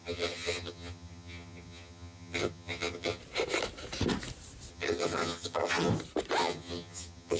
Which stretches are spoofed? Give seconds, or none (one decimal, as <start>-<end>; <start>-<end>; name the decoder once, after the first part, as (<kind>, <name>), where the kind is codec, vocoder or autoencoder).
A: 0.0-3.2 (vocoder, HiFi-GAN); 4.7-5.9; 6.4-7.4

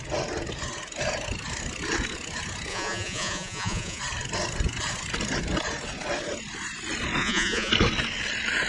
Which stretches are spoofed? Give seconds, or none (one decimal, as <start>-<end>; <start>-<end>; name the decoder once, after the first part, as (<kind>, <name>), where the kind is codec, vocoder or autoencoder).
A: 2.7-4.0 (vocoder, Vocos); 7.2-7.7

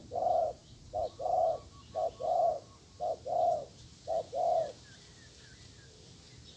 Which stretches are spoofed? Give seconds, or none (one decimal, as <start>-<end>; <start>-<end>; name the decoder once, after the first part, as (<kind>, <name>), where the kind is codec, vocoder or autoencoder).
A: none